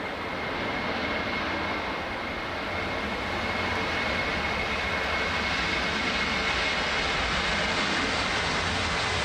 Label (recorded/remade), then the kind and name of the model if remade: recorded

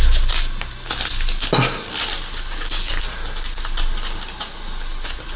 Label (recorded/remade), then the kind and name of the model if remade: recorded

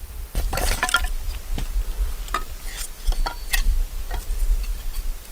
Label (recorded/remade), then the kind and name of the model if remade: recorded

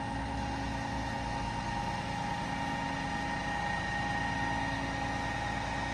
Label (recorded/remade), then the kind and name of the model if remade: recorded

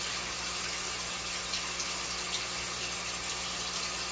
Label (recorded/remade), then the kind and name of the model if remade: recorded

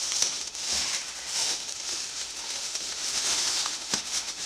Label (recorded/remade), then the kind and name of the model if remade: remade, autoencoder, DAC-VAE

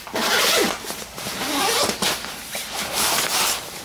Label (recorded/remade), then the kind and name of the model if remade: remade, vocoder, BigVGAN v2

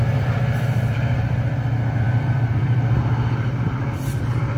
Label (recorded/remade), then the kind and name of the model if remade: remade, vocoder, BigVGAN v2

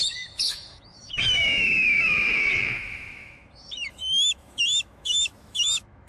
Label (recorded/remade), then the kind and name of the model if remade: remade, autoencoder, DAC-VAE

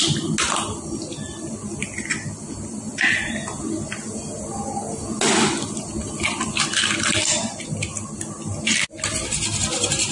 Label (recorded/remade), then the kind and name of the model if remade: recorded